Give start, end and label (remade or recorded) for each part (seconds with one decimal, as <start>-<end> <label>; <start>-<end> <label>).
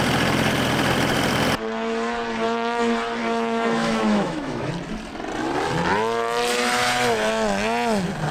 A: 0.0-3.2 recorded; 3.2-4.7 remade; 4.7-8.3 recorded